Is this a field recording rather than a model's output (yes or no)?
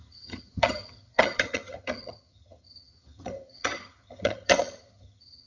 no